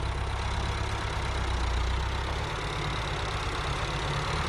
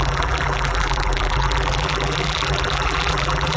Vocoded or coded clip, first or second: second